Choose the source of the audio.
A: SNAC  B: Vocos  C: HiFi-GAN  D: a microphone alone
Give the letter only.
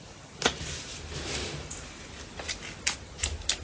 D